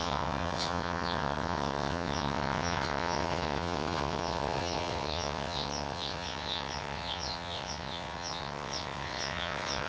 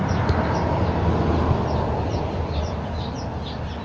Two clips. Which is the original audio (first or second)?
second